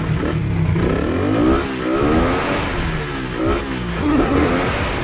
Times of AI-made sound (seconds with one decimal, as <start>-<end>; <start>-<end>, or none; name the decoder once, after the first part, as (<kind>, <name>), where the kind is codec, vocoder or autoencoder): 3.9-4.5 (codec, SNAC)